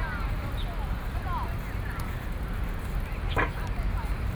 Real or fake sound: real